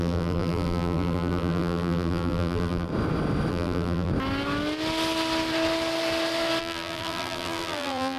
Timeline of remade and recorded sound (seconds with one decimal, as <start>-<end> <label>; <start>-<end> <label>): 0.0-2.9 remade; 2.9-3.5 recorded; 3.5-4.1 remade; 4.1-6.6 recorded; 6.6-8.2 remade